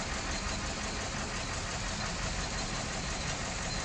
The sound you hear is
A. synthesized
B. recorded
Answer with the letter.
B